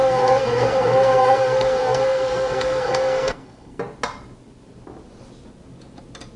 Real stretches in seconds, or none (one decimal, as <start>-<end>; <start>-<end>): 3.8-6.4